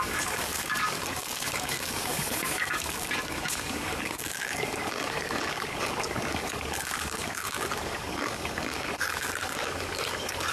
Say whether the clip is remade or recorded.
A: remade